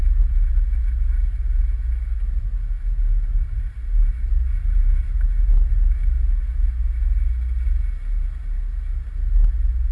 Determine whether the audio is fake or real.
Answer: real